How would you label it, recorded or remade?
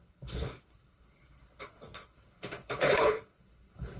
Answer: remade